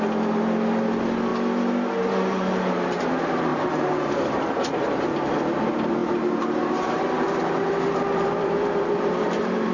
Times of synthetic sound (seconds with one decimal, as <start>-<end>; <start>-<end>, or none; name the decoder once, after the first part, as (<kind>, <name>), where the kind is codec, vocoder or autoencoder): 3.5-4.4 (vocoder, BigVGAN v2); 6.0-9.7